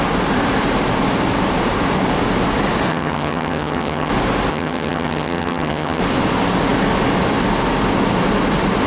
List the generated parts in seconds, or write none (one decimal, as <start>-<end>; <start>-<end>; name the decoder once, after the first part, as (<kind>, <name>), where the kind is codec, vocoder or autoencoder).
2.9-4.1 (vocoder, HiFi-GAN); 4.5-6.0